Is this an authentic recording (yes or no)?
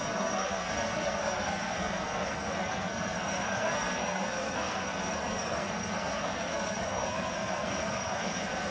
no